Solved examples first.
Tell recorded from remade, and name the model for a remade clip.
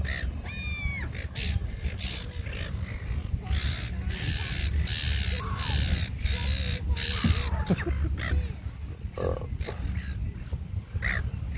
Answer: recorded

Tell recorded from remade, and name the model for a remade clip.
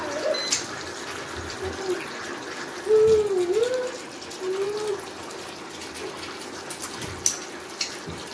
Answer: recorded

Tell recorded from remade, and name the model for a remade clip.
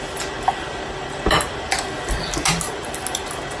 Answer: recorded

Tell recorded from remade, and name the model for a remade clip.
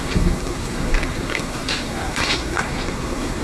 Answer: remade, codec, SNAC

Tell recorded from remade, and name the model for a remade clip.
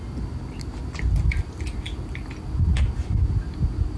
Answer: recorded